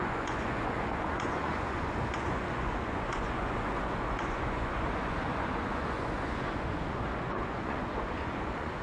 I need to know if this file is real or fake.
fake